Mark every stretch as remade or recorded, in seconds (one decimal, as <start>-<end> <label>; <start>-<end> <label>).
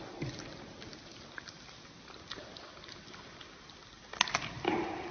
0.0-5.1 recorded